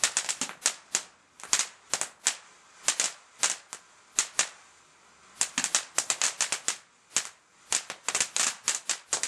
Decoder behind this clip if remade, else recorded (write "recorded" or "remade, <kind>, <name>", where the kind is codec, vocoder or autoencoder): recorded